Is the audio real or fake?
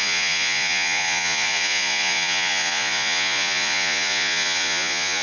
fake